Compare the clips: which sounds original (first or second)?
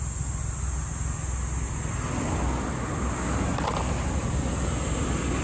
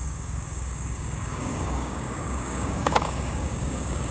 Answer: first